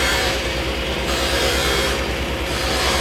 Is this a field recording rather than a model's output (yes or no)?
no